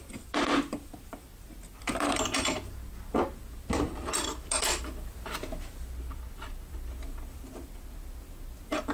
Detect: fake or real real